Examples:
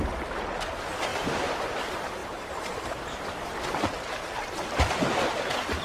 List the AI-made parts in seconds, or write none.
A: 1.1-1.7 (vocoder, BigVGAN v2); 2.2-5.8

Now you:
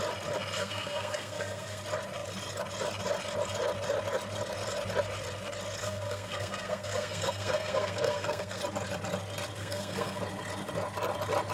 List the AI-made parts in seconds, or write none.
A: 0.6-1.8 (codec, SNAC); 5.8-8.6; 9.6-10.2

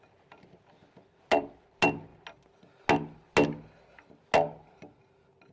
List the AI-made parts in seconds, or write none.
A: none

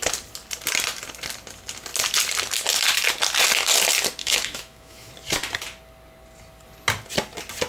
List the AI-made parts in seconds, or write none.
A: 4.2-5.1 (autoencoder, DAC-VAE)